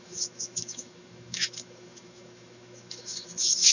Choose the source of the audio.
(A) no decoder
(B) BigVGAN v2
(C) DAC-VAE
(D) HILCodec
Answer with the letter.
C